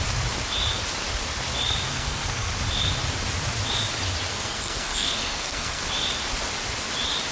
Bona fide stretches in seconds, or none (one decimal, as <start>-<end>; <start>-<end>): 0.0-1.9; 2.5-4.3; 5.8-7.3